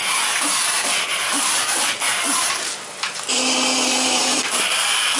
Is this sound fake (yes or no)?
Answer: no